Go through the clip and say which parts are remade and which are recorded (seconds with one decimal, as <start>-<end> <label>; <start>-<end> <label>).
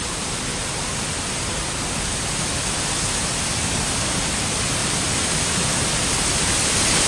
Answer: 0.0-7.1 recorded